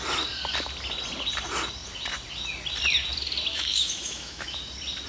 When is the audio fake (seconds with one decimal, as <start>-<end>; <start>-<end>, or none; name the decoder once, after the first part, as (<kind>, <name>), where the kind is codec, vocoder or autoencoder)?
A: 3.5-4.6 (autoencoder, DAC-VAE)